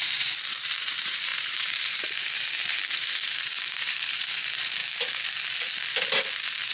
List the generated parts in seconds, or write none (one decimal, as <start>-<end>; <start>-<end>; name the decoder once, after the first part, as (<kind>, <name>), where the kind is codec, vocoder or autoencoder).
0.0-4.8 (vocoder, BigVGAN v2)